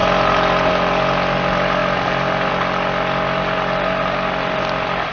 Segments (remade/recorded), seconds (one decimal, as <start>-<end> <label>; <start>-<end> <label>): 0.0-5.1 recorded